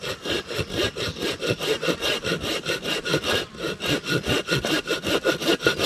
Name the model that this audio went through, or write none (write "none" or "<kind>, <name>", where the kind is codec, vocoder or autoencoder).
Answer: none